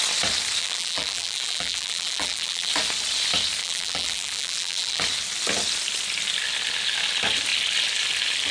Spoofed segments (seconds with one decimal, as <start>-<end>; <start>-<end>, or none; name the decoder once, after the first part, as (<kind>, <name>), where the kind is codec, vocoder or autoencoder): 0.6-2.7 (vocoder, BigVGAN v2); 3.6-5.0